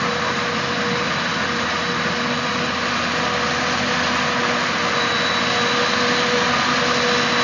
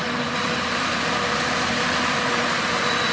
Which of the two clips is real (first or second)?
first